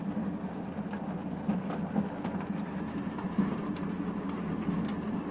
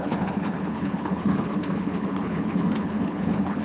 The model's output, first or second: second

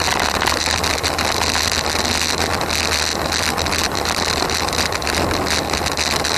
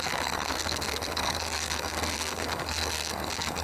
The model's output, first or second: second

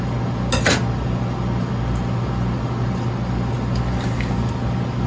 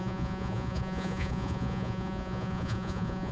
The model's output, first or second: second